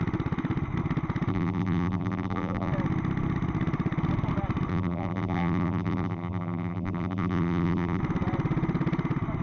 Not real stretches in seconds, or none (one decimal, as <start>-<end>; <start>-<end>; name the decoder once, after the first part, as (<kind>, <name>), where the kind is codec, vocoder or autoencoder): 1.3-2.7 (vocoder, BigVGAN v2); 4.7-8.0